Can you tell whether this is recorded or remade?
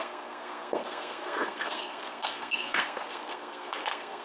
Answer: remade